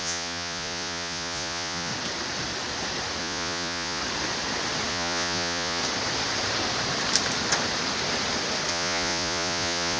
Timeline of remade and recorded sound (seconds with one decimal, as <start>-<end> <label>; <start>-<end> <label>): 0.0-1.9 remade; 1.9-3.2 recorded; 3.2-4.0 remade; 4.0-4.9 recorded; 4.9-5.8 remade; 5.8-8.7 recorded; 8.7-10.0 remade